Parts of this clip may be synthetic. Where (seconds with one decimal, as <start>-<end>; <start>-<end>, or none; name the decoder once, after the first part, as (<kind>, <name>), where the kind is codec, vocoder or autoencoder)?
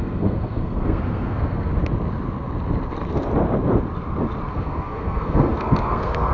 0.0-1.7 (codec, SNAC); 4.5-6.3